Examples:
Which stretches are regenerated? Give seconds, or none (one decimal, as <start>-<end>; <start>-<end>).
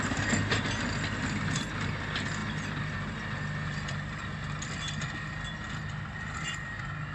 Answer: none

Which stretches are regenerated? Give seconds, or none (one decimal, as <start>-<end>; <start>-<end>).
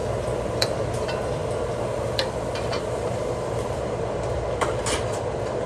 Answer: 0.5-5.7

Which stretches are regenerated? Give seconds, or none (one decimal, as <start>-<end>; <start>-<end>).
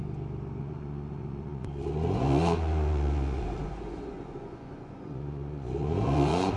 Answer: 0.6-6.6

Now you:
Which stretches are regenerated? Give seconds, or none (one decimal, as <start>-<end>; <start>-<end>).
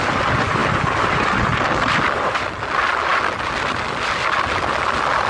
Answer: none